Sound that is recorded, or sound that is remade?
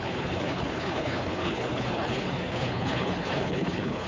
remade